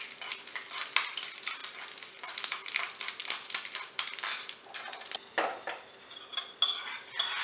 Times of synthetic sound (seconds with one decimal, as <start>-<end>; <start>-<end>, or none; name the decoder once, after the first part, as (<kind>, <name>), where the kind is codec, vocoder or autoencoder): none